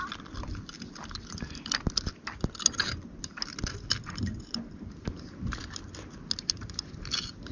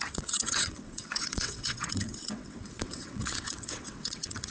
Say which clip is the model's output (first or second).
second